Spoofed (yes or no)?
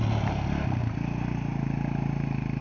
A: no